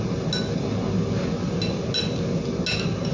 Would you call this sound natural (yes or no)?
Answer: yes